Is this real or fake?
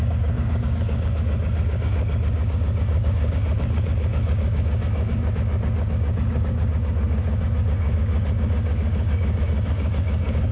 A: fake